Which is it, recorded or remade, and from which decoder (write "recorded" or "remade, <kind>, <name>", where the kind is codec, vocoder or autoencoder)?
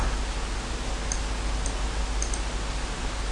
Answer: recorded